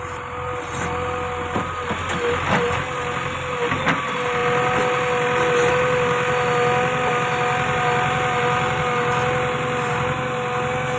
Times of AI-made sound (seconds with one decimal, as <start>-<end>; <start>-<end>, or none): none